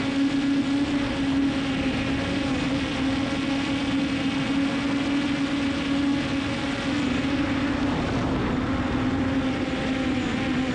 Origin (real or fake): real